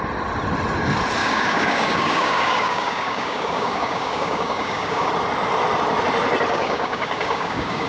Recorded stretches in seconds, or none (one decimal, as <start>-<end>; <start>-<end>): 0.0-1.2; 5.1-6.5